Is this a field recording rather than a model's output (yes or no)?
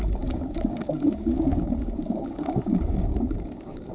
no